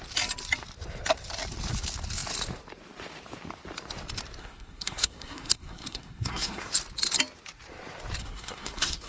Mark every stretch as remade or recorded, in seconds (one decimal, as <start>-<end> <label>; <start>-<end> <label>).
0.0-4.4 recorded; 4.4-6.6 remade; 6.6-8.2 recorded; 8.2-9.1 remade